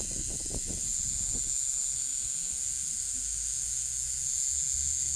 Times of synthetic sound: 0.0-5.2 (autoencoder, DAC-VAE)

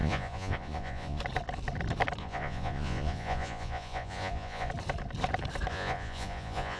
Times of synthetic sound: 0.0-1.2 (vocoder, Vocos); 2.2-4.7; 5.7-6.8

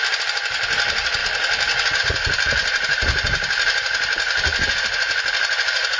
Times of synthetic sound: none

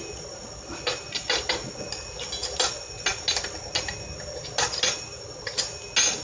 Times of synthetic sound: none

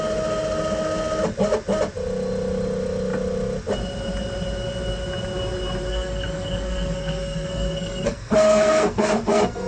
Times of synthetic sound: 5.9-9.7 (codec, SNAC)

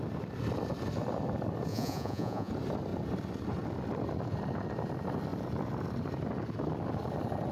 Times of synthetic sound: 1.7-2.5 (vocoder, Vocos)

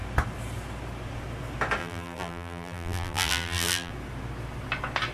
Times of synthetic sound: 1.8-3.9 (vocoder, BigVGAN v2)

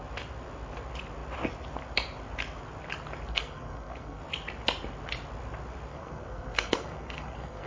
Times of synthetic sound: 3.3-4.2 (codec, SNAC); 5.9-7.7